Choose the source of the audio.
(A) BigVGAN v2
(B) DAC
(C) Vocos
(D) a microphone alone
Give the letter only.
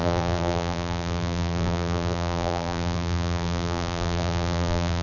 A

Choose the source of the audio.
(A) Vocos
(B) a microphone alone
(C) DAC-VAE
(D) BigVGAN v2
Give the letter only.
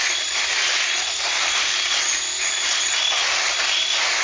B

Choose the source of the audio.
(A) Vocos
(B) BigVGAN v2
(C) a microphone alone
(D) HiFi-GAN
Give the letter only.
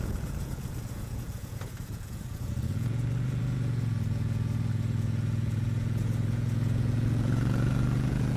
A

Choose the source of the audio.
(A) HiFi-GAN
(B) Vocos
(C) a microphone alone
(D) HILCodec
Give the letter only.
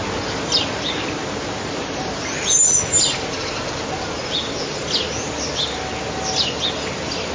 C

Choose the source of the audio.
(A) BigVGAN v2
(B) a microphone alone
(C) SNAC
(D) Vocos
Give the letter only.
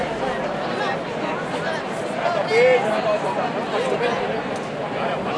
B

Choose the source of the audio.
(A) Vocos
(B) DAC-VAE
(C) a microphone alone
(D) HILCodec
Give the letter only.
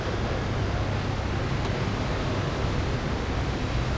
C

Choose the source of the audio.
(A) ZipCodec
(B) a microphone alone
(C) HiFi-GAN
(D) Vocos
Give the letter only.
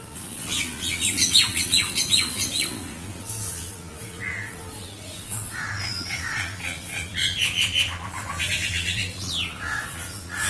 D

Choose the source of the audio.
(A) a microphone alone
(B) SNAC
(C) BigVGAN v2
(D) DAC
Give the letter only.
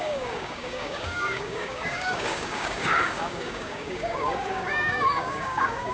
D